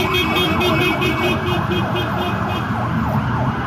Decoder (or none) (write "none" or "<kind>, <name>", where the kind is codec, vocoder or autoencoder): none